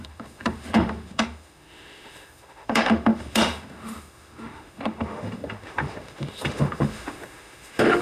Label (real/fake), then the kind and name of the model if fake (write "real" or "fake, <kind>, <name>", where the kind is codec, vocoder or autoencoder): fake, autoencoder, DAC-VAE